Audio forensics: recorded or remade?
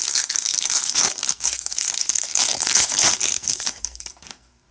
remade